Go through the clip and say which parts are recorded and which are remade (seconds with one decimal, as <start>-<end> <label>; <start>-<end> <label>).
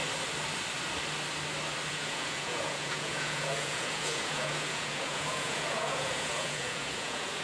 0.0-1.9 recorded; 1.9-7.4 remade